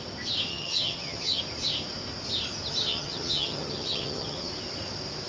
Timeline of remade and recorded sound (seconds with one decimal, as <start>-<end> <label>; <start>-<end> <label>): 0.0-0.5 recorded; 0.5-1.4 remade; 1.4-2.9 recorded; 2.9-4.5 remade; 4.5-5.3 recorded